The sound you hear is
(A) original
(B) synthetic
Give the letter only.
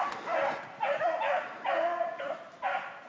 A